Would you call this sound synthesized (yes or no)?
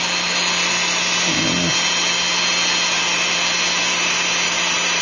no